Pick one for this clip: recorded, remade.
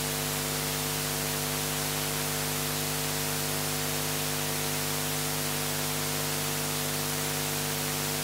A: recorded